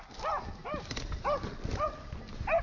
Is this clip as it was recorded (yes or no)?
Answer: yes